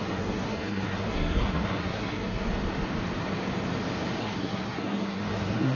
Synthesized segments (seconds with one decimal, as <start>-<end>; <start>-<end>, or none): 0.0-2.5; 4.2-5.7

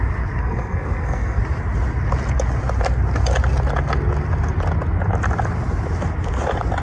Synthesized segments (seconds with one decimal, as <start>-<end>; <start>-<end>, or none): 0.4-1.4

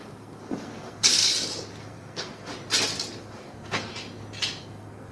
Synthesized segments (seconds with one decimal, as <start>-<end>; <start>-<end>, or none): 0.0-1.2; 1.8-2.5; 3.2-3.9; 4.6-5.1

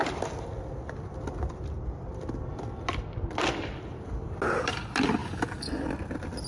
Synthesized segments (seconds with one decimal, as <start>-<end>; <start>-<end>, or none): none

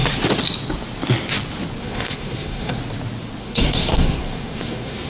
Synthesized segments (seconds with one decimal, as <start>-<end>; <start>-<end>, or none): 1.8-2.8; 3.4-5.1

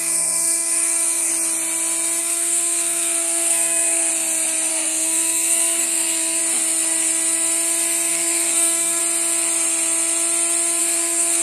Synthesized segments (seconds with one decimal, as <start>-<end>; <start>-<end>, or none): 0.0-1.3; 2.2-4.1; 4.7-6.4; 8.1-9.0; 10.8-11.4

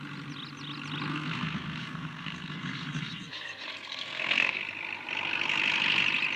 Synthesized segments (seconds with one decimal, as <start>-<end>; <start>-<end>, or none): 1.1-4.6

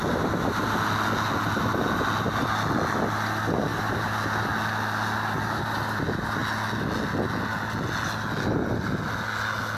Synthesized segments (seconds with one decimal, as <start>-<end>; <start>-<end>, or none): none